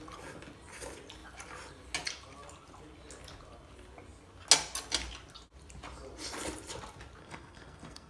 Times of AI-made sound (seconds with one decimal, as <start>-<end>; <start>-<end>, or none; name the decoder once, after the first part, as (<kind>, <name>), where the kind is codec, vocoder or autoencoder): 7.2-8.1 (codec, SNAC)